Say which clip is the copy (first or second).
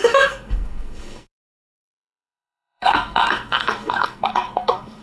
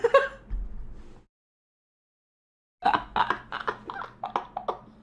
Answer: first